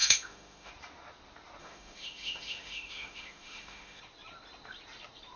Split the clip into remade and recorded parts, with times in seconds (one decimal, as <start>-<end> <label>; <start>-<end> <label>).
0.0-0.7 remade; 0.7-1.6 recorded; 1.6-4.0 remade; 4.0-5.4 recorded